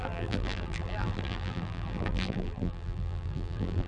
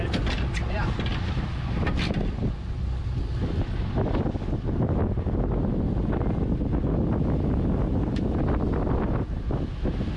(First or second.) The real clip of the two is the second